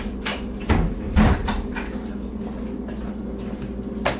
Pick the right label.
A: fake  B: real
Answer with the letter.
A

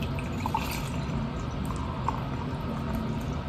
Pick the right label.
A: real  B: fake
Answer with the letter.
A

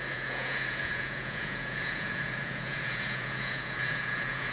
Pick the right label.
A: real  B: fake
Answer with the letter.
B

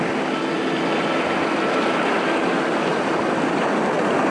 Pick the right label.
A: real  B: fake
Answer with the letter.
A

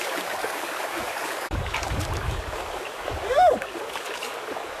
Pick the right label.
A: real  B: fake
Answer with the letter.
B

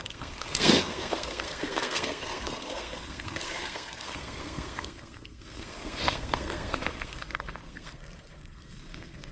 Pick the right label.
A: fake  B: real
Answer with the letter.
A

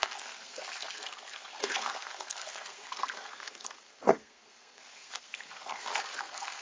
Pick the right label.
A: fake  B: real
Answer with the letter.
A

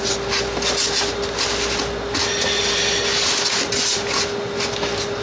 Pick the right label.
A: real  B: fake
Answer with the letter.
A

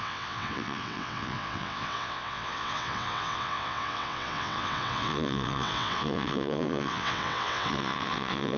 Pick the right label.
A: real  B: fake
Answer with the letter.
B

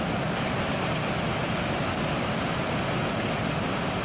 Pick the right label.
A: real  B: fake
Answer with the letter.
A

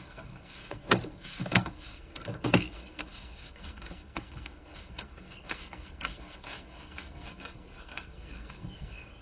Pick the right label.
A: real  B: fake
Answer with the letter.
B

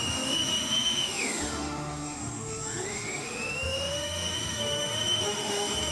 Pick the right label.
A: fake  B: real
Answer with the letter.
A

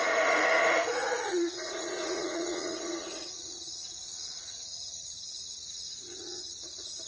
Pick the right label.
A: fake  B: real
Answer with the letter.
A